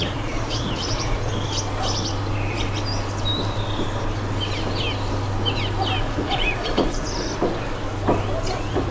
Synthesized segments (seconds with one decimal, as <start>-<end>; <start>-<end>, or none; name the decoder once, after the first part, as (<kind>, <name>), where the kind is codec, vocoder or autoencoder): 0.0-1.3 (vocoder, Vocos); 6.0-7.3; 8.5-8.9